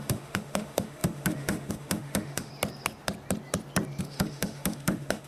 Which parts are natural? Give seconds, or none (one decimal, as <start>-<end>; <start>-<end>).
2.5-4.0